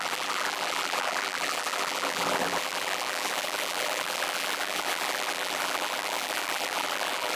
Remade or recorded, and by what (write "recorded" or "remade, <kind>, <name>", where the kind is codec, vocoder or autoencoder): remade, vocoder, BigVGAN v2